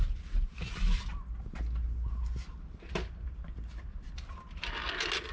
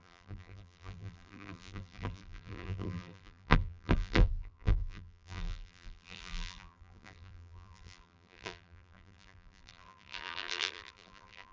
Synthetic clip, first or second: second